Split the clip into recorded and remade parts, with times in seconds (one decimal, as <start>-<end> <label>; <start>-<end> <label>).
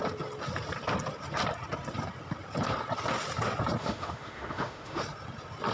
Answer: 0.0-3.8 recorded; 3.8-5.0 remade; 5.0-5.7 recorded